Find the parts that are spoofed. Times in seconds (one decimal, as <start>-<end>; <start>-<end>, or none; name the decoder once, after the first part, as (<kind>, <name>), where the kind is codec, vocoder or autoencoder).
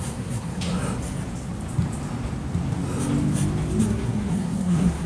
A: 0.0-0.7 (codec, SNAC); 3.8-5.1